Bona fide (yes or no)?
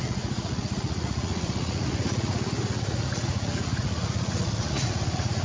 no